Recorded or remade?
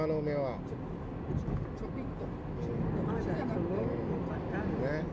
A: recorded